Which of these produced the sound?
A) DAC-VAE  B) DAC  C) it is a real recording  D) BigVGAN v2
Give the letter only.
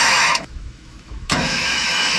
A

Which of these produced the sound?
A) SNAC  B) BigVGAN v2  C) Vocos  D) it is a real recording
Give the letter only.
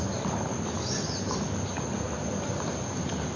D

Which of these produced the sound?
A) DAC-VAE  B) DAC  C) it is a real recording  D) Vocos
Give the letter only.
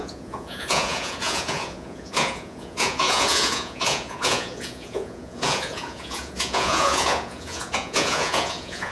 D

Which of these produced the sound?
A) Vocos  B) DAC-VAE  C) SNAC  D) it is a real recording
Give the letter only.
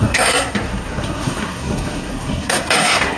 C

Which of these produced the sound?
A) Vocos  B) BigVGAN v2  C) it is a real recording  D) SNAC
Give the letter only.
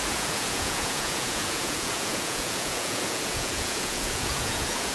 A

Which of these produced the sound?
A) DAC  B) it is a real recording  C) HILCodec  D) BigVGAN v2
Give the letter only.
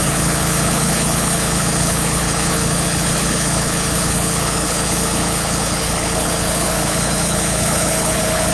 C